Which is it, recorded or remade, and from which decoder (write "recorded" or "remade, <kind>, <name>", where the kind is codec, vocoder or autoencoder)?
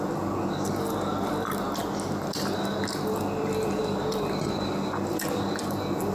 recorded